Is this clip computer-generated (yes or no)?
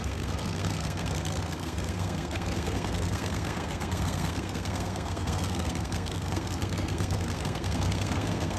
yes